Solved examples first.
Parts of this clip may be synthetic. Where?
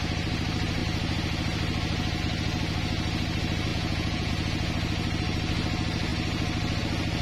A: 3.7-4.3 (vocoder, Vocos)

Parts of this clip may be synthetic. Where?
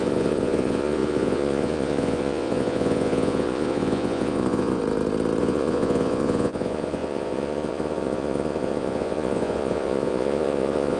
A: 0.0-4.8 (vocoder, Vocos); 5.4-11.0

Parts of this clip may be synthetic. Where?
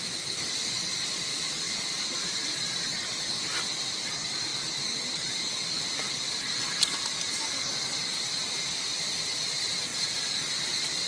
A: 1.3-2.2 (vocoder, Vocos); 9.9-10.5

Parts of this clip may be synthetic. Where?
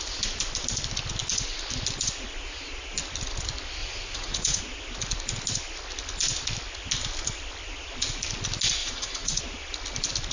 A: 3.8-4.6 (vocoder, Vocos); 8.8-9.4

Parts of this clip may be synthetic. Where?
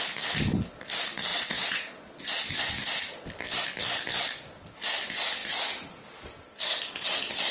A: 1.3-2.2 (vocoder, Vocos)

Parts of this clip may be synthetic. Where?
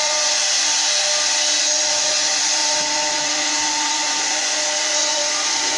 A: 0.0-0.4 (vocoder, Vocos); 1.6-5.8